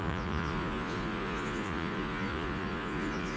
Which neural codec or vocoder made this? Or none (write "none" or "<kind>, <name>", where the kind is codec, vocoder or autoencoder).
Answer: vocoder, Vocos